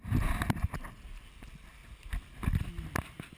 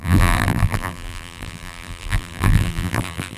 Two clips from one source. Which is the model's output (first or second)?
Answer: second